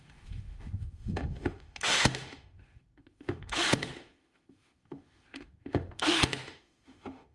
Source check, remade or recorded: remade